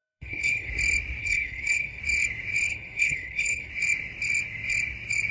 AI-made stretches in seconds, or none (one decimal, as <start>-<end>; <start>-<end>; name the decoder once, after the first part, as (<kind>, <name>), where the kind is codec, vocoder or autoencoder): 0.0-0.7 (codec, HILCodec); 1.2-2.0; 2.7-3.7